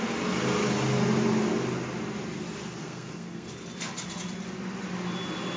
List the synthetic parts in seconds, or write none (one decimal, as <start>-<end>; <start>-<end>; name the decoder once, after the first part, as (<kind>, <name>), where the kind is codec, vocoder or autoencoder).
2.8-3.5 (codec, SNAC)